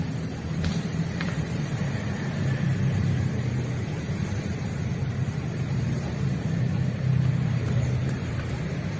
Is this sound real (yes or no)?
no